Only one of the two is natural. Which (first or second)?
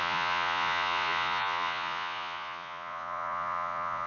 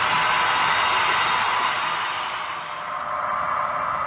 second